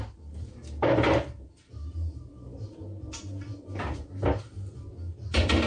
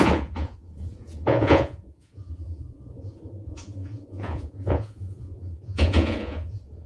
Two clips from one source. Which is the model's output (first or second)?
second